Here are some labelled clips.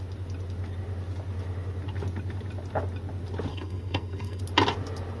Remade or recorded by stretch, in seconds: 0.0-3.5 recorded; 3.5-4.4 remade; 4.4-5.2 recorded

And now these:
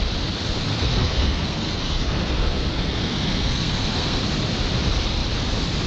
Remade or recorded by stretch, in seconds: 0.0-0.7 recorded; 0.7-4.2 remade; 4.2-5.9 recorded

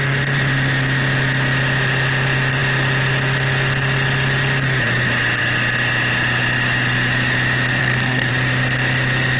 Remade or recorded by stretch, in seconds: 0.0-7.8 recorded; 7.8-8.3 remade; 8.3-9.4 recorded

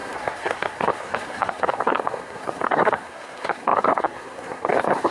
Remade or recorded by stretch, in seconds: 0.0-5.1 remade

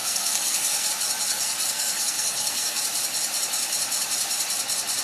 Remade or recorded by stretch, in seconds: 0.0-0.9 remade; 0.9-1.3 recorded; 1.3-2.8 remade; 2.8-5.0 recorded